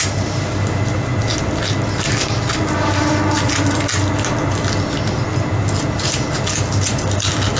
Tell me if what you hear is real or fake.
real